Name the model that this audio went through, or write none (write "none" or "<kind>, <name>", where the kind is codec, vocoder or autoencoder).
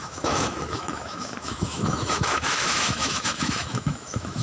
autoencoder, DAC-VAE